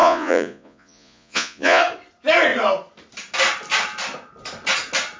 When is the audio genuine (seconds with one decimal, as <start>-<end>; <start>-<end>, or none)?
1.8-5.2